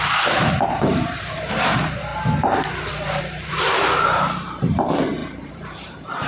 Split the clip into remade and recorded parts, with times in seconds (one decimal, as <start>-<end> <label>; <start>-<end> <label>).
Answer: 0.0-2.1 remade; 2.1-3.2 recorded; 3.2-6.3 remade